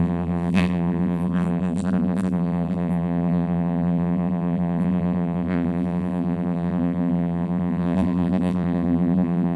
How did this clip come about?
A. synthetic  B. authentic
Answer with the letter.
A